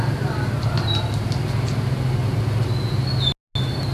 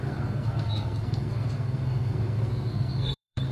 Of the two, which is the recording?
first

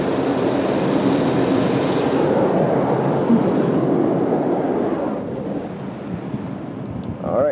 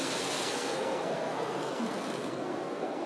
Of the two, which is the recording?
first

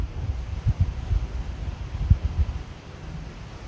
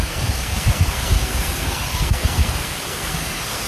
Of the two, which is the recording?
first